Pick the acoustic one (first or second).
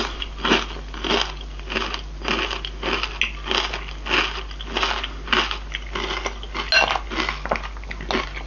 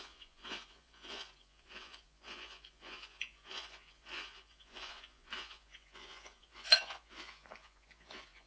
first